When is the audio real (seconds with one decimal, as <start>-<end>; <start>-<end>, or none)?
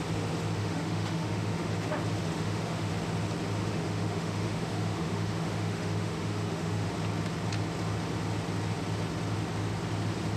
0.0-0.6; 1.7-2.2; 2.9-3.6; 6.9-10.4